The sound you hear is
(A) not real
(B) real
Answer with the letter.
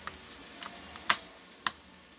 B